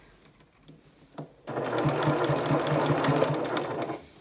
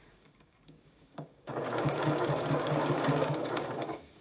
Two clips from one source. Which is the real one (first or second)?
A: first